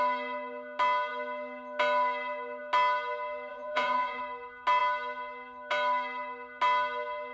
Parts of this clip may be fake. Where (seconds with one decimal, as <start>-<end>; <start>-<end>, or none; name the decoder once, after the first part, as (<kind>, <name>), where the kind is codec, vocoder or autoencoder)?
3.5-4.2 (vocoder, Vocos)